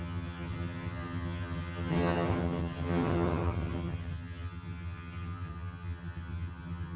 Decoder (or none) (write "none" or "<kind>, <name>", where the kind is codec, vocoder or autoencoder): vocoder, HiFi-GAN